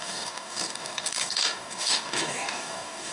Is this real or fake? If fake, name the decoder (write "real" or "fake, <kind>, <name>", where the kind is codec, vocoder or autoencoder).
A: fake, codec, DAC